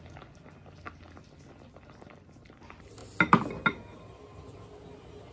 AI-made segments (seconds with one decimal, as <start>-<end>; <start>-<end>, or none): none